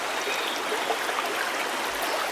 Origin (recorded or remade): recorded